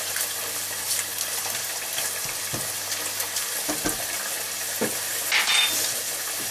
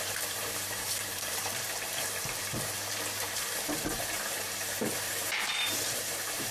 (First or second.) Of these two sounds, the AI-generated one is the second